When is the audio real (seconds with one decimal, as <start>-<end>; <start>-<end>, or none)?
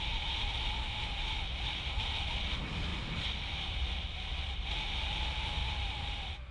0.0-6.5